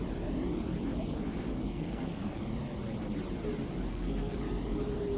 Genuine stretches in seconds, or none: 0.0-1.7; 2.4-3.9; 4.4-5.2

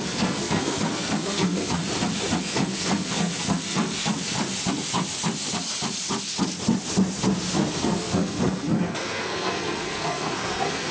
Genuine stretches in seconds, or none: 1.8-2.4; 4.4-7.7

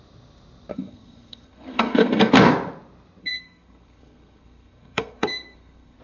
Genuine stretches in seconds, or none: 0.0-0.7; 2.3-3.2

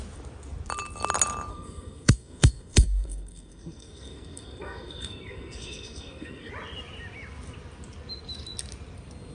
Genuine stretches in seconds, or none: 0.0-1.5; 6.5-9.3

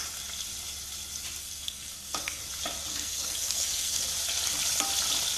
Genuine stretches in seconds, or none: 0.0-1.4; 2.4-2.9; 4.0-5.4

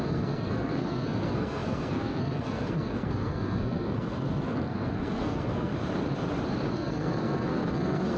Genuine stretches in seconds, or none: 5.7-6.7

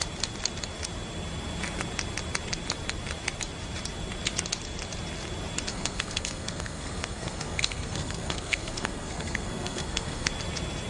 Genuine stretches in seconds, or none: 0.0-5.7; 10.3-10.9

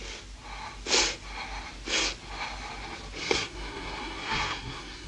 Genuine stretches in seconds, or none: 0.0-3.2